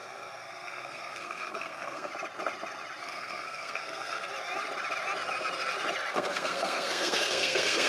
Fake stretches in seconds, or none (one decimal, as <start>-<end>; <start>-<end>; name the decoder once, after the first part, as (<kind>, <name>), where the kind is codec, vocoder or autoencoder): 0.0-2.1 (codec, SNAC); 3.0-4.3; 6.1-7.9

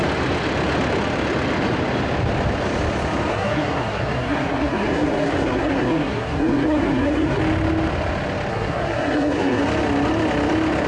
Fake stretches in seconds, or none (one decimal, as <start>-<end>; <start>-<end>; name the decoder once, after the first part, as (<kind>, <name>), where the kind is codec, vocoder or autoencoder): 3.3-7.4 (codec, SNAC); 8.5-9.6

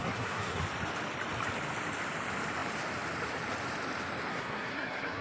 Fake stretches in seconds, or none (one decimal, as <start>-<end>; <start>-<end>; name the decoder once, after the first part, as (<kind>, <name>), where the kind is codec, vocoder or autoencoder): 0.0-0.6 (codec, SNAC); 4.3-5.2

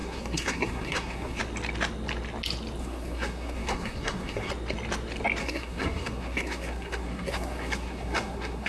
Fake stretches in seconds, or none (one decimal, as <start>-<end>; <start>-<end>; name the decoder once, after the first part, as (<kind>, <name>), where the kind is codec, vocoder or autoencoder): 0.0-1.4 (codec, SNAC); 2.8-4.5; 5.4-8.7

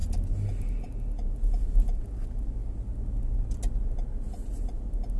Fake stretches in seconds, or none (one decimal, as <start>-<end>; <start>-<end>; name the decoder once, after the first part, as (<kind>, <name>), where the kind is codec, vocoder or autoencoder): none

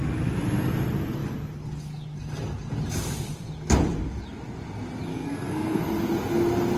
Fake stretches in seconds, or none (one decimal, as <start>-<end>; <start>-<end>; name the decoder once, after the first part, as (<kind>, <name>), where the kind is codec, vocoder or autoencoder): 5.1-5.8 (codec, SNAC)

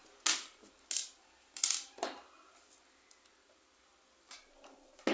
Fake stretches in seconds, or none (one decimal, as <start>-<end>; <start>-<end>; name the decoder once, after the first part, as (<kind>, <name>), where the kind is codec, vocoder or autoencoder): none

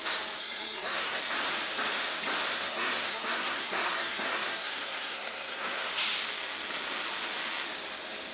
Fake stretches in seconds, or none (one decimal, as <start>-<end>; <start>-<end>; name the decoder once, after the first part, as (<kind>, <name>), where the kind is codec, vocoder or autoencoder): 0.4-1.2 (codec, SNAC); 2.5-5.9